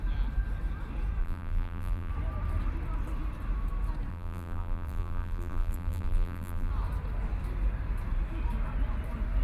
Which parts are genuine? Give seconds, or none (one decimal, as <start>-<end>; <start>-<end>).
0.0-1.2; 2.1-4.1; 6.7-9.4